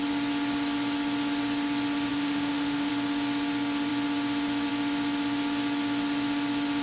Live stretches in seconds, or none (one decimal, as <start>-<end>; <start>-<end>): 0.0-2.1; 2.9-6.8